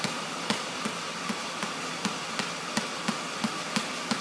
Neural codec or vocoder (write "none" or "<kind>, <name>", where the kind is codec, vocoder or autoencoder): none